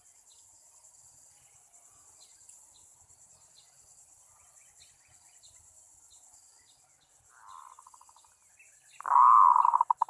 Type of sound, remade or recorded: recorded